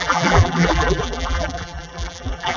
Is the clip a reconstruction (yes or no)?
yes